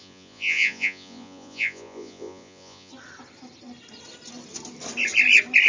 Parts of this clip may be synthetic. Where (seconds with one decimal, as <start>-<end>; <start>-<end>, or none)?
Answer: 0.0-2.9